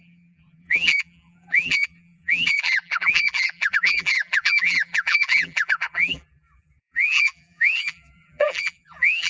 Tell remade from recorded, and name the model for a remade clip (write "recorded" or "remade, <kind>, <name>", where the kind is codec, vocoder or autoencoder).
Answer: remade, vocoder, BigVGAN v2